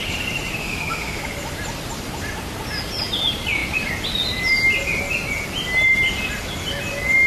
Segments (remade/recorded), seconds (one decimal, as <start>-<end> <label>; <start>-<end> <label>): 0.0-0.6 recorded; 0.6-1.2 remade; 1.2-7.3 recorded